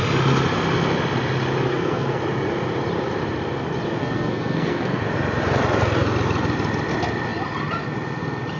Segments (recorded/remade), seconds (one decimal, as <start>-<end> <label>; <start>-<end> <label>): 0.0-1.7 recorded; 1.7-2.2 remade; 2.2-4.0 recorded; 4.0-5.0 remade; 5.0-8.6 recorded